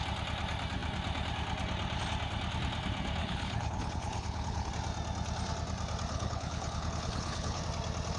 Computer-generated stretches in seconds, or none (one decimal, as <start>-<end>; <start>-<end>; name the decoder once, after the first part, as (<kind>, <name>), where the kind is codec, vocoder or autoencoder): 3.2-4.7 (codec, HILCodec); 6.1-7.6